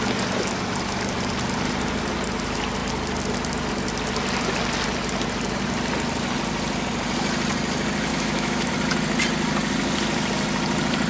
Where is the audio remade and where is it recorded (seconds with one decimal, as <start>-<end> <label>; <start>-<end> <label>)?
0.0-8.1 recorded; 8.1-8.7 remade; 8.7-11.1 recorded